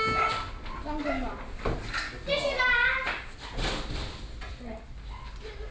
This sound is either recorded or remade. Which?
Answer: recorded